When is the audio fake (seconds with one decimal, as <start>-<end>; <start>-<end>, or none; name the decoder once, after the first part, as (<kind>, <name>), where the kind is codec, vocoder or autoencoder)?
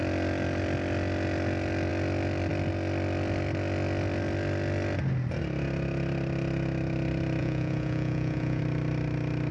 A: 7.4-8.6 (vocoder, Vocos)